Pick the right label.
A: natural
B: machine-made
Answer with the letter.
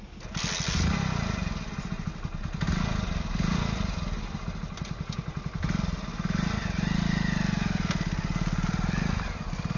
A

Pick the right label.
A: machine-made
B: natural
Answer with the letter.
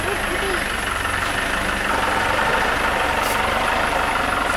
B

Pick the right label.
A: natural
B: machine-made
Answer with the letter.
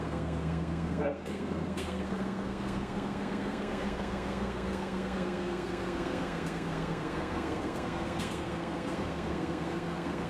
B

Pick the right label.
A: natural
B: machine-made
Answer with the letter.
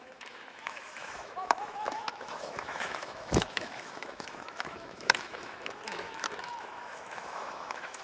B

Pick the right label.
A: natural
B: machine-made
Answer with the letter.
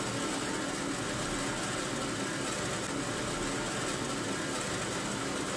A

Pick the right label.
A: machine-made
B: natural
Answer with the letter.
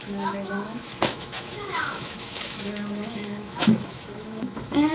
A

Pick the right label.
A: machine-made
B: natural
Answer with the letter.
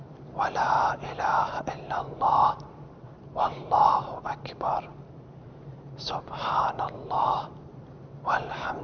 A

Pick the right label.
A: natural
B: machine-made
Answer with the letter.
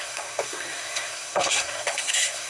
B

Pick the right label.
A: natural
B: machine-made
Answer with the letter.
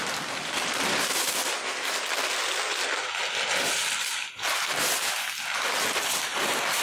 A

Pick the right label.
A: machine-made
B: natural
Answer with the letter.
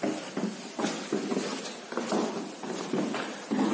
B